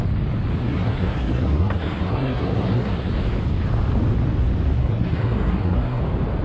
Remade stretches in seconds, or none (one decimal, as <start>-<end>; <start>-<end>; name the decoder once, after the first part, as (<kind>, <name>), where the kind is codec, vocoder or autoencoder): 0.6-3.1 (codec, SNAC); 4.8-6.0